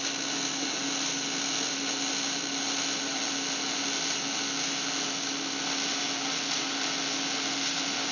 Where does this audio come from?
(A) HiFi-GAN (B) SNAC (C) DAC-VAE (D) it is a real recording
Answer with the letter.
D